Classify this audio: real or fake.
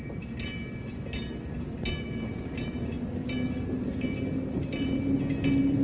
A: real